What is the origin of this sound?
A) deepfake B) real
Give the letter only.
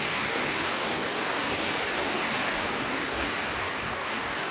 A